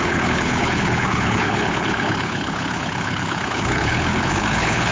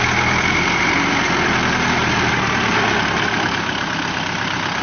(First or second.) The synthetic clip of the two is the first